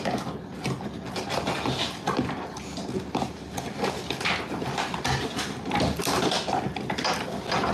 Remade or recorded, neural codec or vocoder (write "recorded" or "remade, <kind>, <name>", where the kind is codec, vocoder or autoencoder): recorded